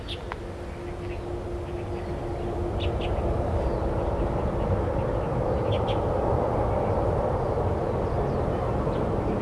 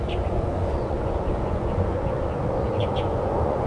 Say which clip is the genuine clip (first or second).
first